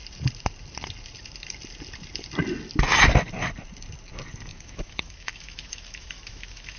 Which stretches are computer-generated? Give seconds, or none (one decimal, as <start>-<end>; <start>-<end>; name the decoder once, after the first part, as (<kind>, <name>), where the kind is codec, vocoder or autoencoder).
4.5-6.8 (autoencoder, DAC-VAE)